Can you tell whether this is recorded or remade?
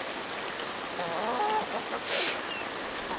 recorded